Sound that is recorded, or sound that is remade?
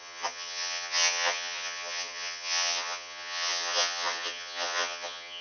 remade